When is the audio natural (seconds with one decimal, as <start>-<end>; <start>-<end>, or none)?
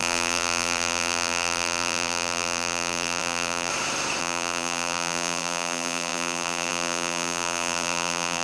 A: 3.7-4.2